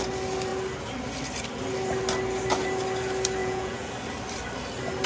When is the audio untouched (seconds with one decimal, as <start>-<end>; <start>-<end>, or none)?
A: 0.0-3.4; 3.9-5.1